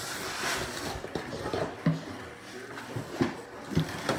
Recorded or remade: recorded